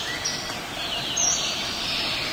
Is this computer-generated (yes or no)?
no